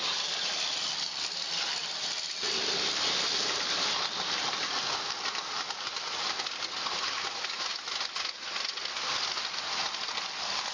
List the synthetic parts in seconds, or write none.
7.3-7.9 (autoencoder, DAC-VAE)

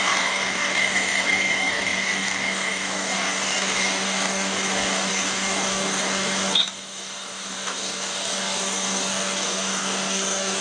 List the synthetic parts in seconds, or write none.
0.0-10.6 (codec, DAC)

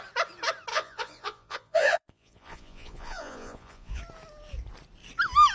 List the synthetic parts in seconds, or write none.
0.7-4.0 (vocoder, Vocos)

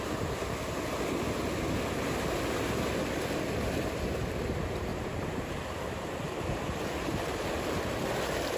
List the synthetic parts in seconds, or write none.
4.9-7.5 (vocoder, BigVGAN v2)

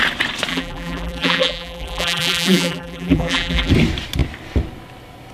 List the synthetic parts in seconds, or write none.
0.5-3.7 (vocoder, BigVGAN v2)

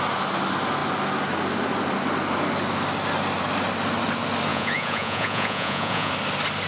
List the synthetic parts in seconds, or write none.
4.5-6.1 (vocoder, Vocos)

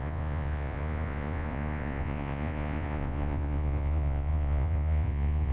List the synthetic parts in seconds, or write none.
0.0-5.5 (vocoder, Vocos)

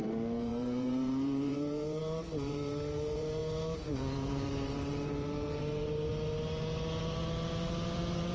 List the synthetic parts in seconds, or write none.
0.0-6.1 (vocoder, BigVGAN v2); 7.0-8.3